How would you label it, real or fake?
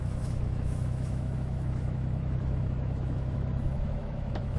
fake